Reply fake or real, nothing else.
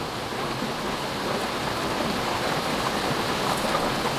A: real